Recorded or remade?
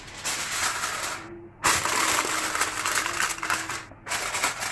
recorded